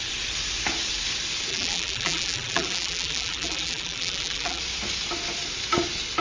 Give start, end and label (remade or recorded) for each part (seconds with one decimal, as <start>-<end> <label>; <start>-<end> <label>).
0.0-1.5 recorded; 1.5-4.6 remade; 4.6-6.2 recorded